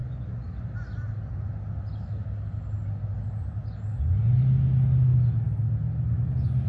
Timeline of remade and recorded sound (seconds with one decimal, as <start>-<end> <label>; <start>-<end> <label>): 0.0-6.7 recorded